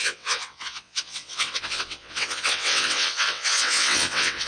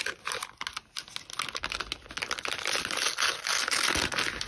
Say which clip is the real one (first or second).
second